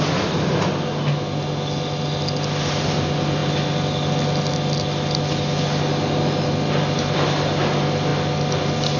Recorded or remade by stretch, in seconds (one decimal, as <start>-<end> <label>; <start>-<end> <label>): 0.0-9.0 recorded